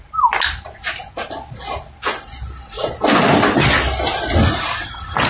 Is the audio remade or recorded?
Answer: recorded